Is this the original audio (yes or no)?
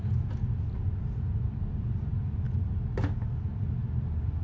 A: yes